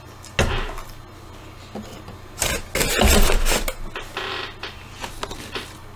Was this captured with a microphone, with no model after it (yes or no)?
yes